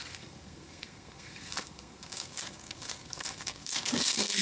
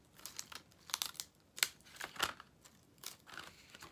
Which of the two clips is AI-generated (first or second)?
first